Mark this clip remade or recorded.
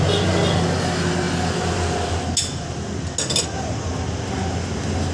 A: recorded